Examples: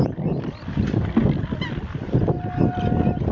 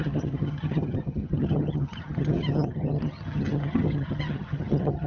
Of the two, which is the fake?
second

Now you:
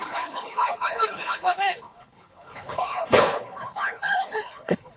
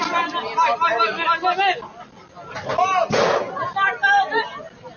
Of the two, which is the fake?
first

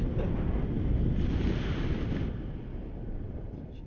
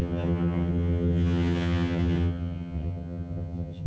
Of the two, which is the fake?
second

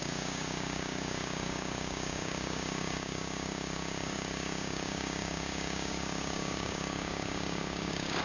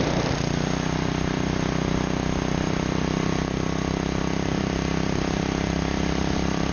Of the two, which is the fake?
first